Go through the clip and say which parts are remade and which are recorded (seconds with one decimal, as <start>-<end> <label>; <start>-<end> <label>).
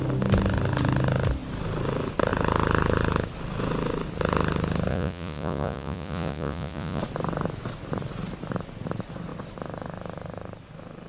0.0-4.9 recorded; 4.9-7.0 remade; 7.0-11.1 recorded